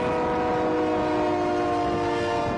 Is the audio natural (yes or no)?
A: yes